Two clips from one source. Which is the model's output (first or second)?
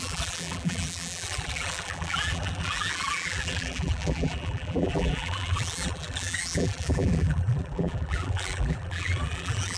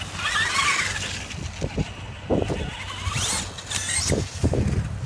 first